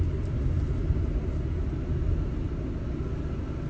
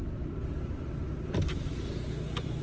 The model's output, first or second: second